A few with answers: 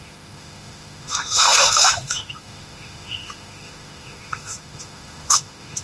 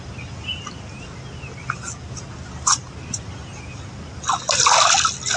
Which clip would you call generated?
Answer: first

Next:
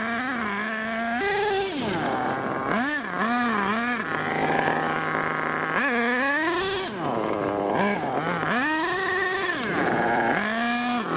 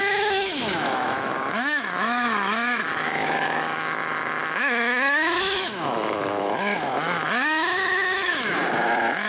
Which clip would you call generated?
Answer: second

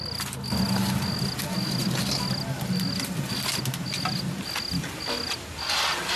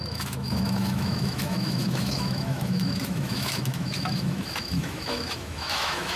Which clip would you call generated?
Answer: second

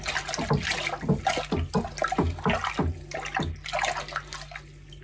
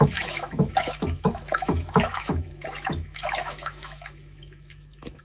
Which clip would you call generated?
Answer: second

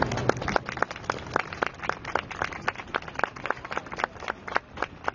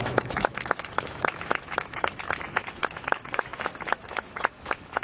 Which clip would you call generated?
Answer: second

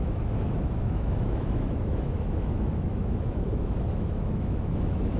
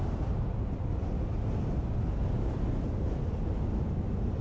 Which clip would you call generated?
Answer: first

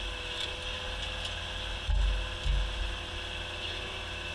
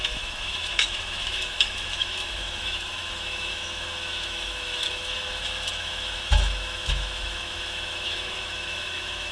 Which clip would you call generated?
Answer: second